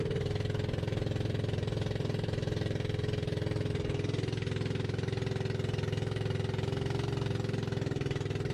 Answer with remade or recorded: recorded